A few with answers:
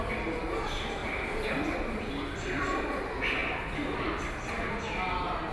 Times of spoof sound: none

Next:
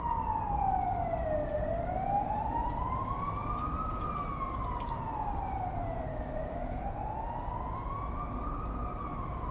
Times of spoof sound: 6.1-6.8 (autoencoder, DAC-VAE)

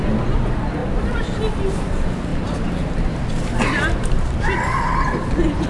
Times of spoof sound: 2.3-4.4 (vocoder, BigVGAN v2)

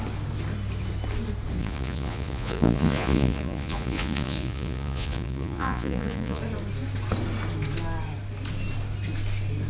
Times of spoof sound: 1.6-6.4 (vocoder, Vocos)

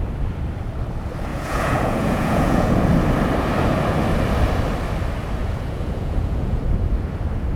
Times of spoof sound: 1.3-2.8 (vocoder, Vocos); 5.4-6.6